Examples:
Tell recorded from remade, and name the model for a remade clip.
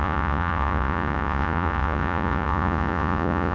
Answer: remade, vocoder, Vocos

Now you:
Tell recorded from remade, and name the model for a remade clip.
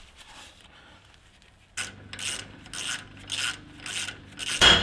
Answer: recorded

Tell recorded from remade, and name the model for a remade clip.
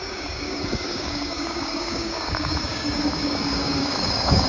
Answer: remade, codec, DAC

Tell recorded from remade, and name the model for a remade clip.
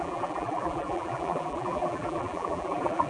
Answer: remade, vocoder, BigVGAN v2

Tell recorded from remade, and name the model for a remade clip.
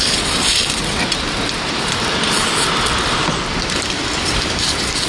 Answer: remade, vocoder, BigVGAN v2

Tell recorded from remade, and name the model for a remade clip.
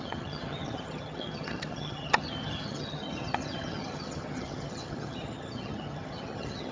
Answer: remade, vocoder, HiFi-GAN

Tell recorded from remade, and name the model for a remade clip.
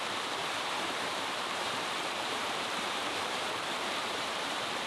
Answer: remade, vocoder, BigVGAN v2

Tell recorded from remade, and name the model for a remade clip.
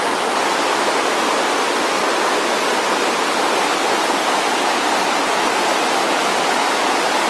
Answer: recorded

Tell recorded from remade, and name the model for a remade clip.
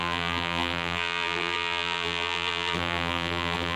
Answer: remade, vocoder, BigVGAN v2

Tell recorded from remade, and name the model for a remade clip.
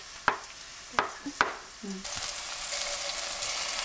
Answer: recorded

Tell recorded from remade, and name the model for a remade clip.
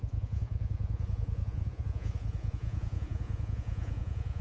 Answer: remade, vocoder, Vocos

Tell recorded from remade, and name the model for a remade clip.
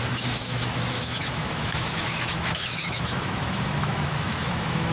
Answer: remade, autoencoder, DAC-VAE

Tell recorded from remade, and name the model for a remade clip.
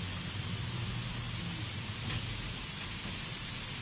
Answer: recorded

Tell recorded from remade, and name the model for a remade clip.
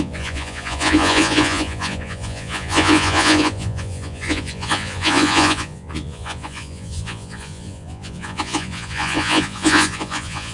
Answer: remade, vocoder, Vocos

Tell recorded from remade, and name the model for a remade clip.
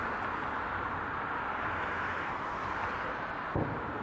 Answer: recorded